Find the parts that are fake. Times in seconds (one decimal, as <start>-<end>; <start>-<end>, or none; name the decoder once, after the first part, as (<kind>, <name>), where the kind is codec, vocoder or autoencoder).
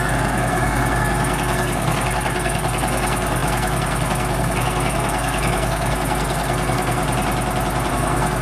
0.0-7.0 (codec, SNAC); 7.9-8.4